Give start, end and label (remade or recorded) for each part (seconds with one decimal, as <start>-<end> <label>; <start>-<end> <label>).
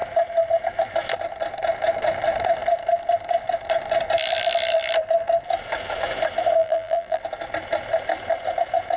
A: 0.0-6.6 recorded; 6.6-7.2 remade; 7.2-9.0 recorded